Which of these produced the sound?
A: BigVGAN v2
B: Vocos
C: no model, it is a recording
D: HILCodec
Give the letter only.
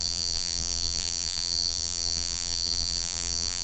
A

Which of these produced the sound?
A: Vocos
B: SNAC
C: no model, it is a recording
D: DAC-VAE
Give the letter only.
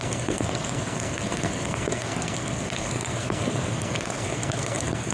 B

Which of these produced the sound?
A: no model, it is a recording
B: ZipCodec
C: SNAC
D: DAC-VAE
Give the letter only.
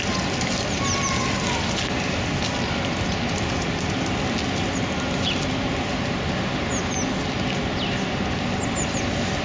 A